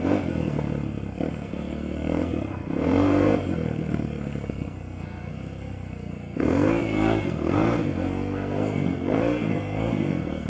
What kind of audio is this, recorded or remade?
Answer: remade